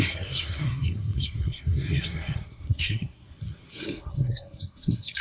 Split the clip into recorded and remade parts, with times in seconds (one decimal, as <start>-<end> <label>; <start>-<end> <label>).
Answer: 0.0-5.2 remade